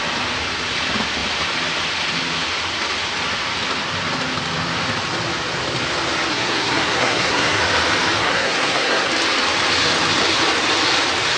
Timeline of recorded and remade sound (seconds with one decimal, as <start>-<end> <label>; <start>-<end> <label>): 0.0-6.3 recorded; 6.3-7.6 remade; 7.6-8.2 recorded; 8.2-9.1 remade; 9.1-11.4 recorded